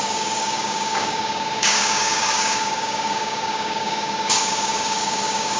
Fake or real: fake